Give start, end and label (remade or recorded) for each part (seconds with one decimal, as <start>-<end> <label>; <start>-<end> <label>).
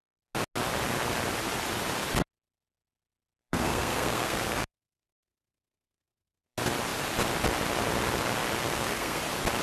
0.0-3.5 recorded; 3.5-6.5 remade; 6.5-8.6 recorded; 8.6-9.2 remade; 9.2-9.6 recorded